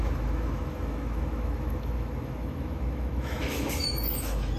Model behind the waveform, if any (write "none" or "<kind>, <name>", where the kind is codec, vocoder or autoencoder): autoencoder, DAC-VAE